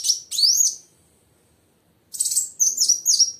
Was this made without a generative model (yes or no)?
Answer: yes